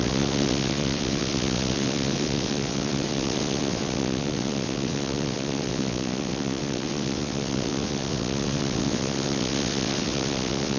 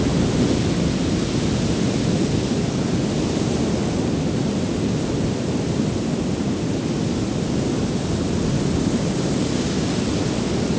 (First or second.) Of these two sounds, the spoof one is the first